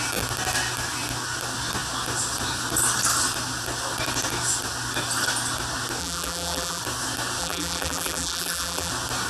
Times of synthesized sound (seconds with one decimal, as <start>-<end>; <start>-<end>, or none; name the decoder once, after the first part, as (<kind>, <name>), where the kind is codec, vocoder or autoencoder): 6.0-6.8 (vocoder, BigVGAN v2); 7.4-8.9